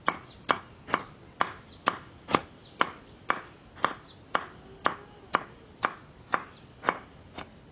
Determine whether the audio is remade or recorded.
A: recorded